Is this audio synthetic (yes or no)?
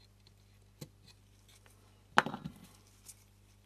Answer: no